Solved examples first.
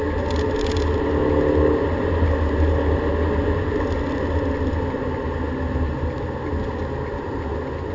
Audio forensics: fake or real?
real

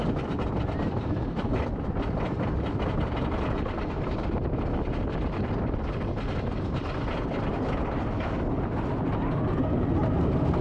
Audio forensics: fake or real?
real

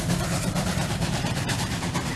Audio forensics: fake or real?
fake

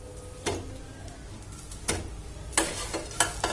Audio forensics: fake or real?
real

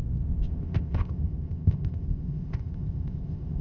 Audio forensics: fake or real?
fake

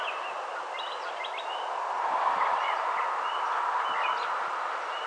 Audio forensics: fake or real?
real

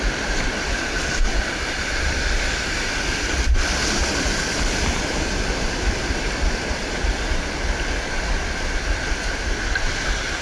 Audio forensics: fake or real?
real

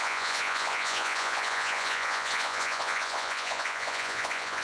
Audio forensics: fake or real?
fake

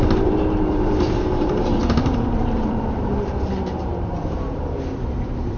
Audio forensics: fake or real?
fake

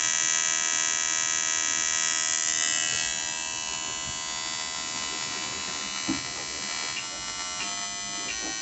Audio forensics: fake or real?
real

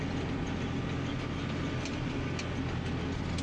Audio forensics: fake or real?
real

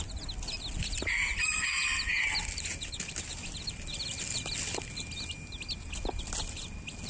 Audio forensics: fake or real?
real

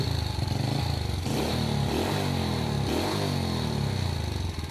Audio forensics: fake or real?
real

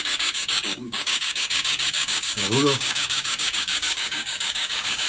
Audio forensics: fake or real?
fake